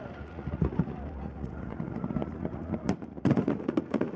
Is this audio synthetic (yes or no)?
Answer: yes